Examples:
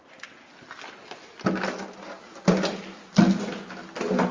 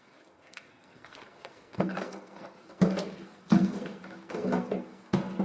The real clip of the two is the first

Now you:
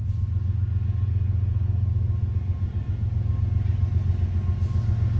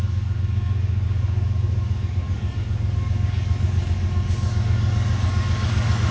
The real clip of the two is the first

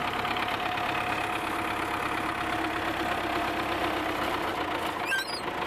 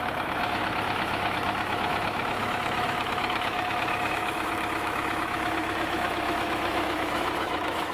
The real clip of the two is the first